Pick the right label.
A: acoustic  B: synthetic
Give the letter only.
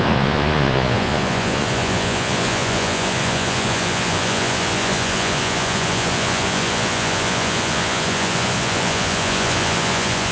B